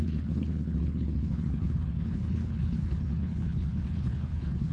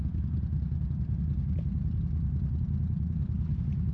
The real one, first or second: second